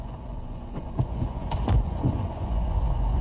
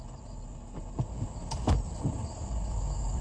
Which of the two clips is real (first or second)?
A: second